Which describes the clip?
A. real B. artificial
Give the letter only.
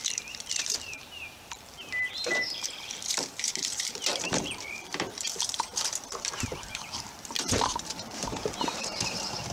B